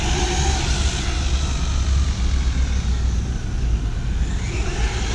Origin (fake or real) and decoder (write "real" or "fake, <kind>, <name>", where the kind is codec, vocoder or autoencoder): real